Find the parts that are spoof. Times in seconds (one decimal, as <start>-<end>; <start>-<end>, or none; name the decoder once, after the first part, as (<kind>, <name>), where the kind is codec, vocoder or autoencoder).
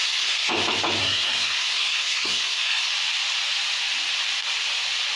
0.0-0.5 (codec, SNAC); 1.0-2.9